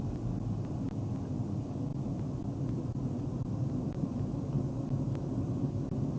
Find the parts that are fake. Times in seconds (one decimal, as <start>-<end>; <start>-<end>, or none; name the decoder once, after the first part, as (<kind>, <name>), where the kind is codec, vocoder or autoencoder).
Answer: none